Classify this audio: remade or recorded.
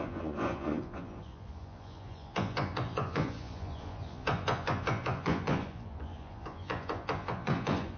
remade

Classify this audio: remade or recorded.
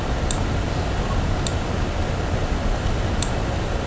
recorded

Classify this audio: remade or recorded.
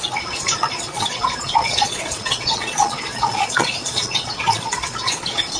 remade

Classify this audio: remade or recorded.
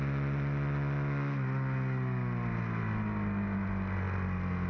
recorded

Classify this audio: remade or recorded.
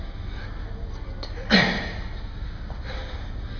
recorded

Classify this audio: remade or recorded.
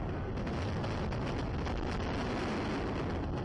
recorded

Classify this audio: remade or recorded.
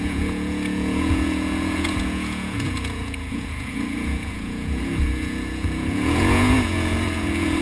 remade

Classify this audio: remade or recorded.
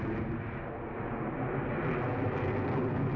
recorded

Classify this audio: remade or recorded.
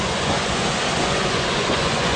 remade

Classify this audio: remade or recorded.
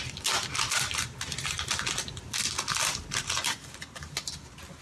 recorded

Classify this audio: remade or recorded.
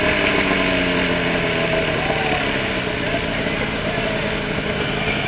recorded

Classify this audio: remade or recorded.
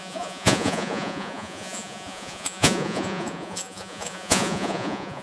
remade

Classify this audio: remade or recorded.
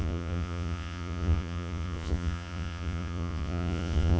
remade